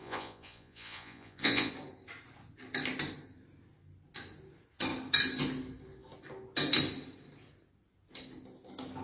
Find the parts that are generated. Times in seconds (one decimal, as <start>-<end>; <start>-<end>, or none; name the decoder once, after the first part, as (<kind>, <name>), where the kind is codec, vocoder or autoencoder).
0.0-1.7 (vocoder, Vocos)